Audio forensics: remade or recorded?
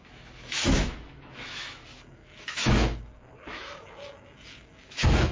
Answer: remade